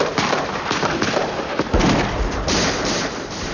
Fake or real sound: fake